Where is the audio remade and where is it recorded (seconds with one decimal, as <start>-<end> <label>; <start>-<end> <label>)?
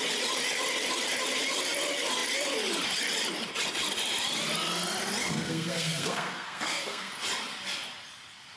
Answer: 0.0-5.2 recorded; 5.2-7.1 remade; 7.1-8.6 recorded